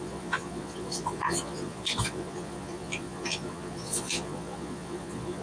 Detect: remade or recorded remade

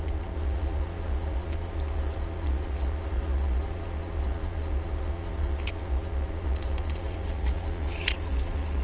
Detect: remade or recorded remade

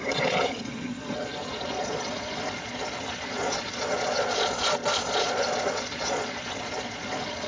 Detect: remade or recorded remade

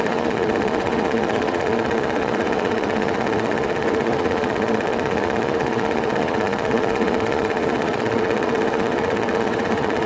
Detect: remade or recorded remade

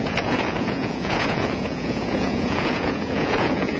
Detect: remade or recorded remade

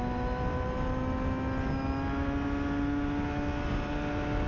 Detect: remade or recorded recorded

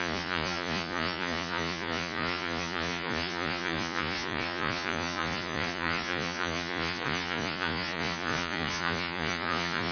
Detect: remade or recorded remade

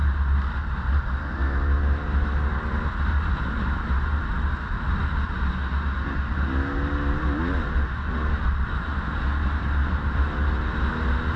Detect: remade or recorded recorded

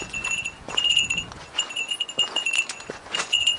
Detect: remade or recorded remade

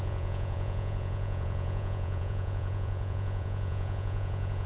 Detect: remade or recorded remade